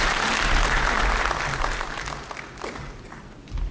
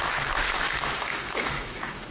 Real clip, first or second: first